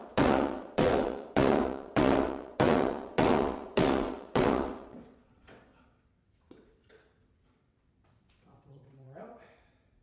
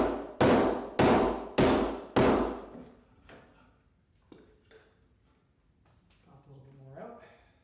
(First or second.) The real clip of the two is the second